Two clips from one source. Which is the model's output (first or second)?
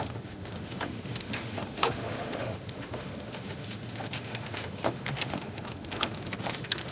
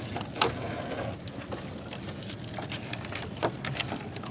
first